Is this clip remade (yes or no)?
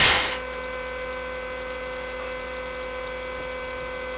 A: no